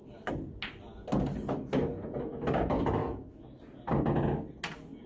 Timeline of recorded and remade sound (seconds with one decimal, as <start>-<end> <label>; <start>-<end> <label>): 0.0-3.0 recorded; 3.0-3.6 remade; 3.6-5.1 recorded